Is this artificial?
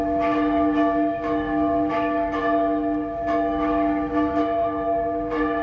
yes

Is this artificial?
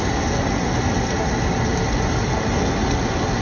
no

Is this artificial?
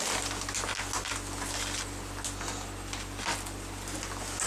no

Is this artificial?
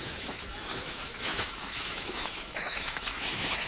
yes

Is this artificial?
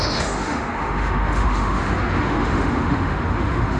yes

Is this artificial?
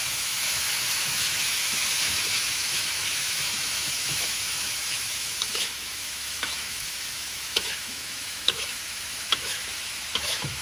yes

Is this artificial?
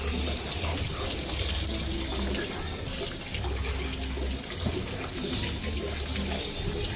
no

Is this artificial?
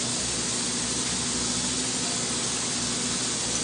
no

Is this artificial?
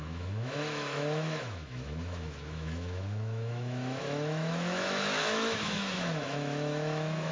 yes